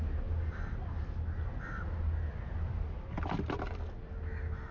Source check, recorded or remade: recorded